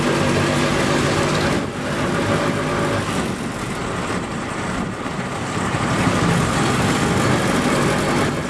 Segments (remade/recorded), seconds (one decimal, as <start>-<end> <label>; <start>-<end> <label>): 0.0-8.5 recorded